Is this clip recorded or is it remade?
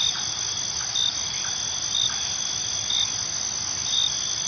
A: recorded